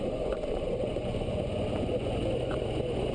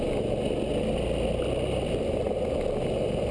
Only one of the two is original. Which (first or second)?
second